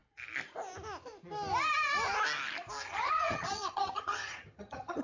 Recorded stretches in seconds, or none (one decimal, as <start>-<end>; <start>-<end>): 0.0-2.8